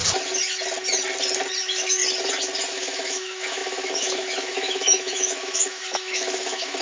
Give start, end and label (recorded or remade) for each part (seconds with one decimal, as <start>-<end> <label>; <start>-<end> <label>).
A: 0.0-1.6 recorded; 1.6-2.0 remade; 2.0-2.7 recorded; 2.7-6.8 remade